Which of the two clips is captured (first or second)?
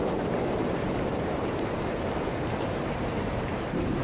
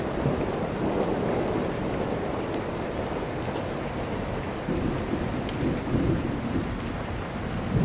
second